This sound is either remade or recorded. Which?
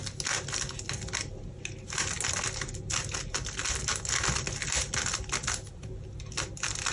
recorded